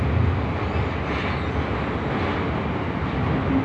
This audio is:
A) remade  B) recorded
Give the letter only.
B